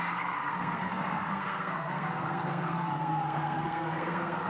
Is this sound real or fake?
fake